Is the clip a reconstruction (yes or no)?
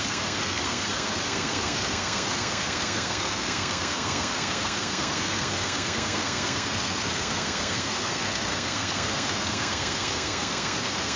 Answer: yes